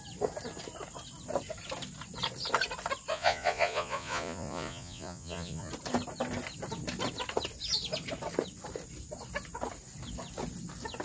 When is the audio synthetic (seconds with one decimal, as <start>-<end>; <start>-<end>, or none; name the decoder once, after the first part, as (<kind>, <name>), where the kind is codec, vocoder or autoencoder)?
3.1-5.7 (vocoder, Vocos)